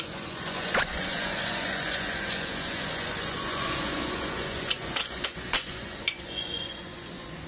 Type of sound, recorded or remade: remade